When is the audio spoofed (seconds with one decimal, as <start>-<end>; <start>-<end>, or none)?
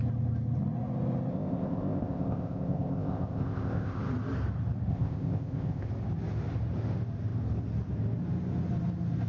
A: 1.3-4.0; 4.9-5.9